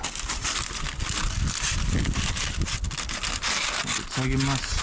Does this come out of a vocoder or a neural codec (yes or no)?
no